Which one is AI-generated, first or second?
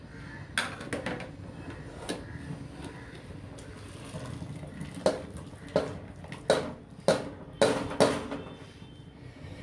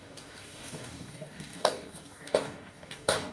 second